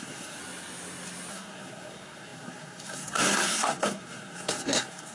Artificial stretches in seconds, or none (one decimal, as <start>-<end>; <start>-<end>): 0.0-0.4; 1.3-5.1